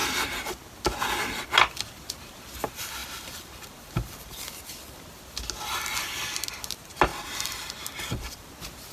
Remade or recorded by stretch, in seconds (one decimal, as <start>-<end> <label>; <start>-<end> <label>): 0.0-3.0 recorded; 3.0-5.0 remade; 5.0-7.1 recorded; 7.1-8.5 remade; 8.5-8.9 recorded